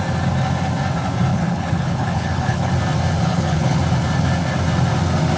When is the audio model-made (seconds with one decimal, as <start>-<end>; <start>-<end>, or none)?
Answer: 1.3-2.7; 3.3-3.8